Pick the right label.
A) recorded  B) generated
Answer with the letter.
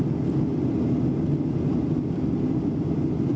A